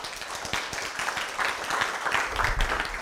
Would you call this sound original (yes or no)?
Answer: no